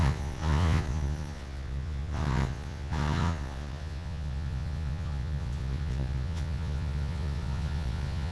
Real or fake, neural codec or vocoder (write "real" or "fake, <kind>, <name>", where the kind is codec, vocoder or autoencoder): fake, vocoder, Vocos